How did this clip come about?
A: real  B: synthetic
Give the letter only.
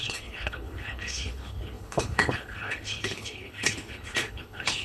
B